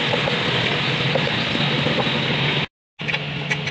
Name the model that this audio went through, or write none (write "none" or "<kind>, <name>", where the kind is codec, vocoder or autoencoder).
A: none